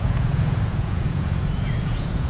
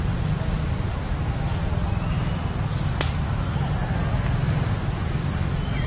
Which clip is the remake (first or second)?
first